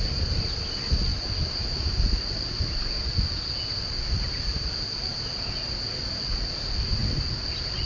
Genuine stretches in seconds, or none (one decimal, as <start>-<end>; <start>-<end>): 0.0-7.9